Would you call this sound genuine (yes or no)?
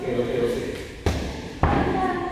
no